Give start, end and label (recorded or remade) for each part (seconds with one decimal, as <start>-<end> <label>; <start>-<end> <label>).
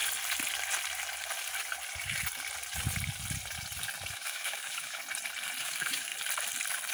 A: 0.0-4.1 recorded; 4.1-5.0 remade; 5.0-5.6 recorded; 5.6-6.1 remade; 6.1-6.9 recorded